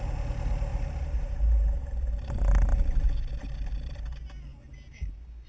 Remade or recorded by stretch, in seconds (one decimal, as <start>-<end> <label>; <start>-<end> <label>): 0.0-0.7 recorded; 0.7-2.3 remade; 2.3-5.5 recorded